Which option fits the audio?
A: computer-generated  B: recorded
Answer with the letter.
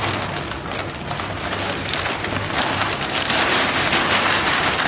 B